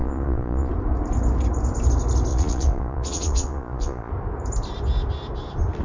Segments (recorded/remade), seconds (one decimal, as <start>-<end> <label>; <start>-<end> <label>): 0.0-0.7 remade; 0.7-2.3 recorded; 2.3-4.1 remade; 4.1-5.8 recorded